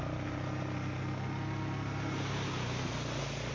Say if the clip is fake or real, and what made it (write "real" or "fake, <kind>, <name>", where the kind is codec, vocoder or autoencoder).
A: real